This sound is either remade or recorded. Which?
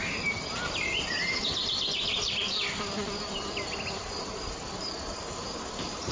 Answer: remade